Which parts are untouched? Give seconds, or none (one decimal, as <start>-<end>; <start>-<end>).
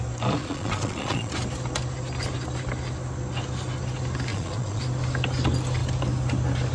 0.0-0.4; 1.3-4.3; 4.8-6.7